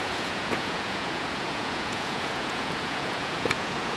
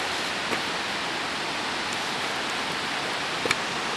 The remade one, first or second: first